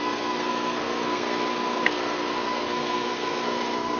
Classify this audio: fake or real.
fake